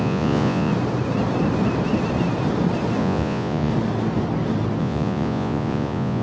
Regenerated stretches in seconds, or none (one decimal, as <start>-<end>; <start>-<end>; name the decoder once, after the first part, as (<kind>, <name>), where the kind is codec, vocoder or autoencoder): 0.0-0.7 (vocoder, Vocos); 3.0-3.7; 4.8-6.2